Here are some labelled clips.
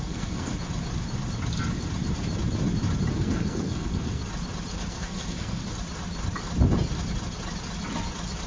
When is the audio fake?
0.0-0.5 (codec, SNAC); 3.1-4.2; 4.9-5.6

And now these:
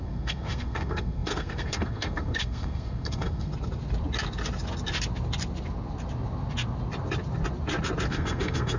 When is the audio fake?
0.0-3.5 (codec, SNAC); 8.1-8.8

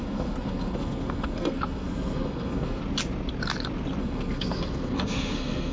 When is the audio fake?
0.0-2.8 (codec, SNAC); 4.0-5.7

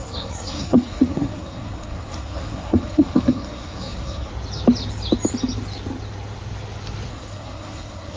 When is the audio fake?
0.0-4.3 (codec, SNAC); 7.1-8.2